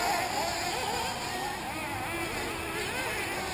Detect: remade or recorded recorded